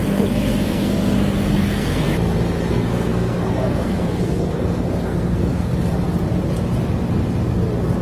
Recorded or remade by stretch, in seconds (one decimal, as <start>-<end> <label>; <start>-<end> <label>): 0.0-2.1 remade; 2.1-2.7 recorded; 2.7-5.7 remade; 5.7-8.0 recorded